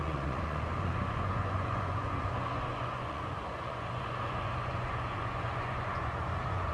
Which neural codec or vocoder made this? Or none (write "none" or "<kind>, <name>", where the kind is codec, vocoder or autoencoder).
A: vocoder, Vocos